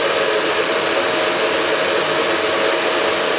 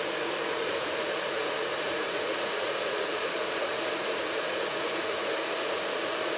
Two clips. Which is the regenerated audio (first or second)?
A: second